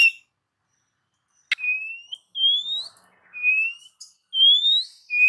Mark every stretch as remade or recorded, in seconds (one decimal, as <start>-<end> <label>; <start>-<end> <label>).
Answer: 0.0-5.3 recorded